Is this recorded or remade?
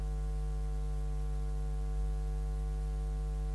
recorded